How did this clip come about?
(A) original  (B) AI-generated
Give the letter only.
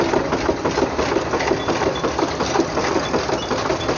A